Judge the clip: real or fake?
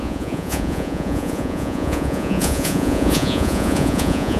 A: fake